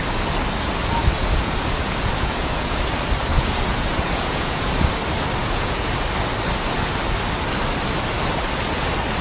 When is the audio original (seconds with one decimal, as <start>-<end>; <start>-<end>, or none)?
0.0-1.2; 2.8-3.3; 4.9-5.4; 5.9-9.2